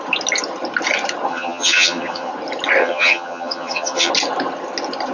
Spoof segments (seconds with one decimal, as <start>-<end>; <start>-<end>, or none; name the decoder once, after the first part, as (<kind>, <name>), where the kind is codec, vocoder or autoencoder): 1.3-2.3 (vocoder, HiFi-GAN); 2.8-4.1